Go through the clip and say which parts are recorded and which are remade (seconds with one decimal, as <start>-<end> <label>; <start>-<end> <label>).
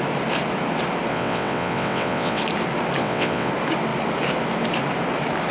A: 0.0-1.1 recorded; 1.1-2.4 remade; 2.4-3.0 recorded; 3.0-3.5 remade; 3.5-5.5 recorded